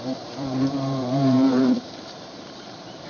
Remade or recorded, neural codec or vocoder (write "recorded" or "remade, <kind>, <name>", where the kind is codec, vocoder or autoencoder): remade, vocoder, BigVGAN v2